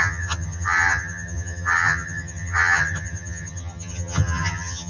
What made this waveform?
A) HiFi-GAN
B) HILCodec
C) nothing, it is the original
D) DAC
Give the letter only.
A